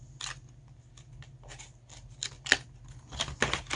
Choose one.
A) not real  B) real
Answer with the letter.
B